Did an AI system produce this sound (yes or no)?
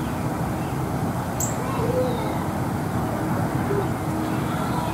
no